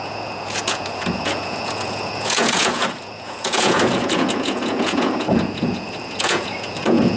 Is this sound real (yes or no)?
no